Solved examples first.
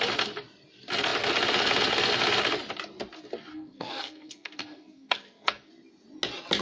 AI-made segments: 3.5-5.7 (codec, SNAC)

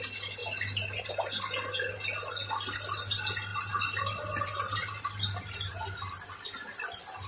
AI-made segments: none

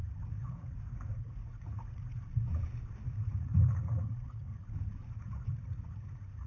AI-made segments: 0.0-2.2 (vocoder, Vocos); 3.2-4.5; 5.1-6.5

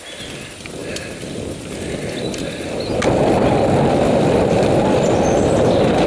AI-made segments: none

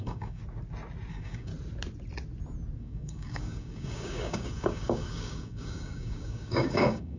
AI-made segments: 0.0-0.4 (codec, DAC); 1.1-1.5; 2.8-7.2